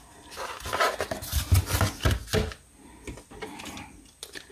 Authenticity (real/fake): real